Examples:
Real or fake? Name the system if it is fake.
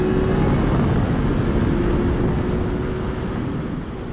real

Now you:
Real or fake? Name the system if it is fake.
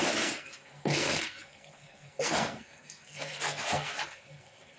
fake, codec, SNAC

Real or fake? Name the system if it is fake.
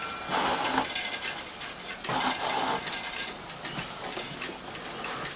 real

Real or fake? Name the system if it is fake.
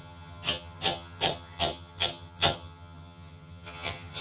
fake, vocoder, HiFi-GAN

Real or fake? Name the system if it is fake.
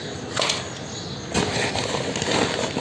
real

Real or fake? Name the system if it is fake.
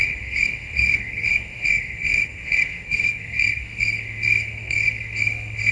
fake, codec, SNAC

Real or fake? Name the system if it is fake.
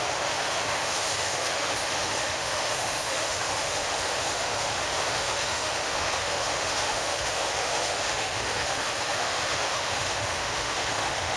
fake, autoencoder, DAC-VAE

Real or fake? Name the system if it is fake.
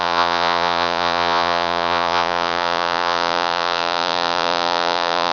fake, vocoder, Vocos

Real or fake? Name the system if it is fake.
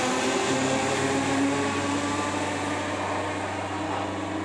real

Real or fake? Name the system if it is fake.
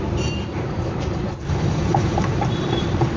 fake, vocoder, BigVGAN v2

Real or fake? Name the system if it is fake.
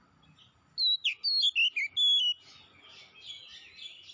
real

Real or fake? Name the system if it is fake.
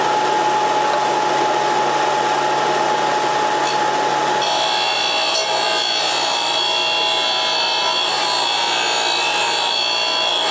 real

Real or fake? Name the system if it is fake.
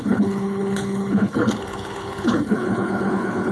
fake, codec, HILCodec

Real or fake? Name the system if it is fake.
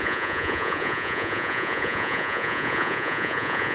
fake, vocoder, Vocos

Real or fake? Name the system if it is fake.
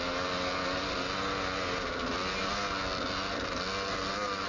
real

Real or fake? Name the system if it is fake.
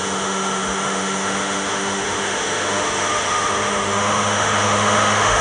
fake, autoencoder, DAC-VAE